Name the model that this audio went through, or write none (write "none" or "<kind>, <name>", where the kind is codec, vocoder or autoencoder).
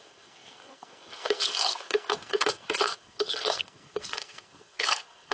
codec, SNAC